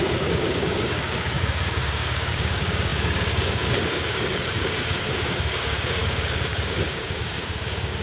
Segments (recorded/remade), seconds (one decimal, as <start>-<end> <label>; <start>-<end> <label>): 0.0-8.0 remade